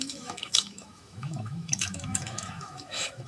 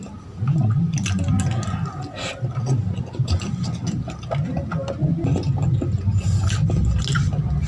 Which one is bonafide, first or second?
second